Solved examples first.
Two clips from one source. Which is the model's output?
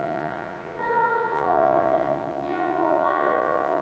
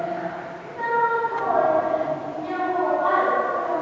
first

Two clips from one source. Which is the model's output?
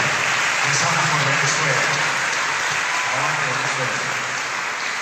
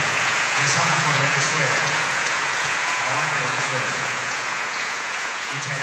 second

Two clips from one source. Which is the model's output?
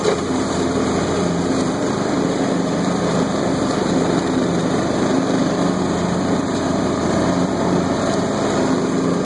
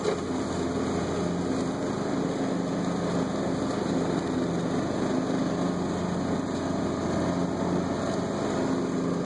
first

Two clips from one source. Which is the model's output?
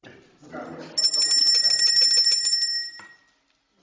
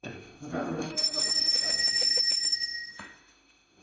second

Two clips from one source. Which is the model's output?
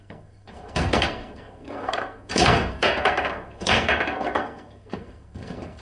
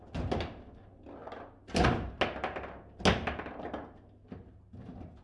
first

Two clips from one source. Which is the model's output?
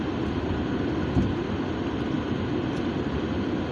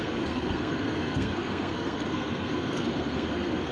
second